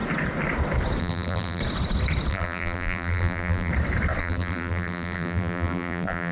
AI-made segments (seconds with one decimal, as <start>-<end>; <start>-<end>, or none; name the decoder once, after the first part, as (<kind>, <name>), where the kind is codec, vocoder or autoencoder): 1.0-1.6 (vocoder, BigVGAN v2); 2.3-3.7; 4.2-6.3